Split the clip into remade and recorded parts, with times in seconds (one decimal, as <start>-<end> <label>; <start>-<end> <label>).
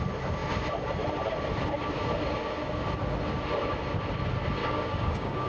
0.0-4.6 recorded; 4.6-5.5 remade